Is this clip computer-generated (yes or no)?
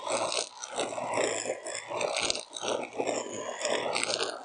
no